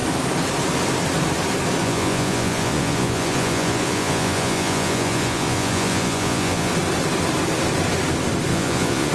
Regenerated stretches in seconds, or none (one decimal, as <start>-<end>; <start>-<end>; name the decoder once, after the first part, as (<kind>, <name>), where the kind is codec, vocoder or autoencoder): 1.8-6.7 (vocoder, Vocos); 8.5-9.1